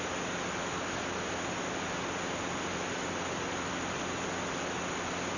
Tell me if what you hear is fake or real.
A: real